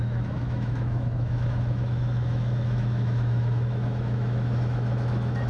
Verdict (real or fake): fake